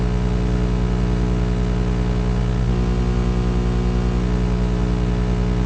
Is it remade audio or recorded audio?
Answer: recorded